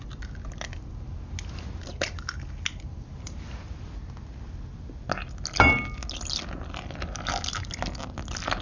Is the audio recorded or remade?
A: recorded